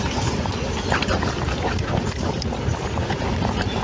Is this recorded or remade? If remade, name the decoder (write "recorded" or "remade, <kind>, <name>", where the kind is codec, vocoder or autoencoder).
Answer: recorded